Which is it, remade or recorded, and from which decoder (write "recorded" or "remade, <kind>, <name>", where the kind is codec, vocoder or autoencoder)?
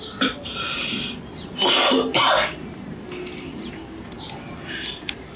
recorded